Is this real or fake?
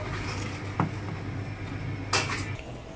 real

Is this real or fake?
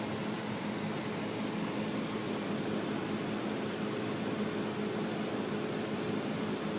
real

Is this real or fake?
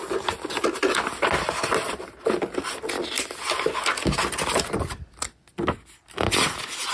real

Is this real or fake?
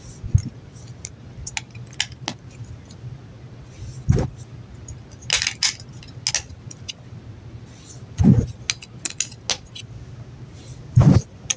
real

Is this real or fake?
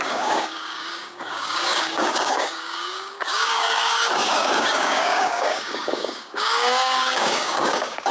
fake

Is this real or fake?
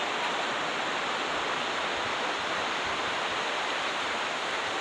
fake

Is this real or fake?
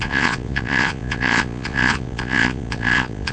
fake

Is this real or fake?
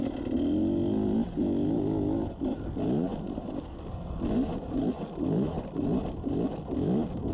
real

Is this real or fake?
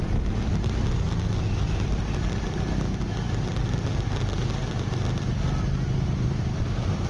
real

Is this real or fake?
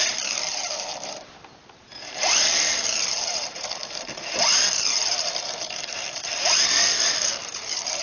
fake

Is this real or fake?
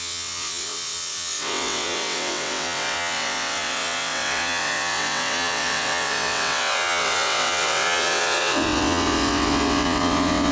fake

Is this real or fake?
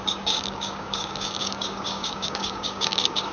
fake